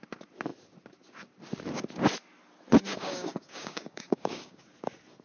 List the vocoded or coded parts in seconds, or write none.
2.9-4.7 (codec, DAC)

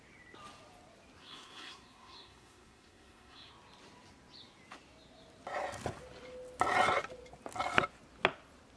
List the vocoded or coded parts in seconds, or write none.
1.2-3.5 (codec, SNAC)

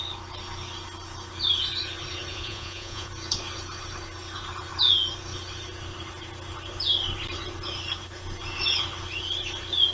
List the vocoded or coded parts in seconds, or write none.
2.3-3.1 (vocoder, Vocos)